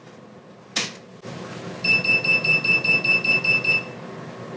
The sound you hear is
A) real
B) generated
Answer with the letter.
A